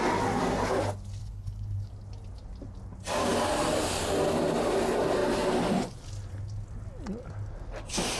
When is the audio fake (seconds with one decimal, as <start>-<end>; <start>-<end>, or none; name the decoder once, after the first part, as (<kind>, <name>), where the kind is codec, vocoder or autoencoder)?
1.2-1.9 (codec, HILCodec)